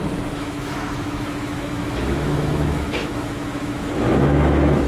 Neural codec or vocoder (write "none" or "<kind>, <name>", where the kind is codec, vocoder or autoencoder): autoencoder, DAC-VAE